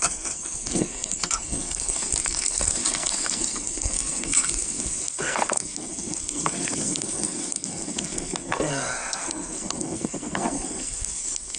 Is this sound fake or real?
fake